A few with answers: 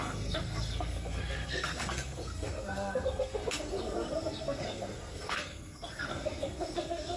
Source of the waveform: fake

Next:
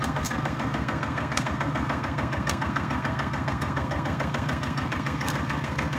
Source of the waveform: fake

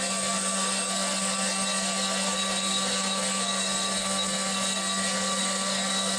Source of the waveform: fake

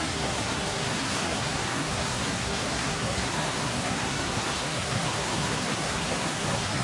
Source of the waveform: fake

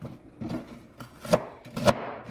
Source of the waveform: real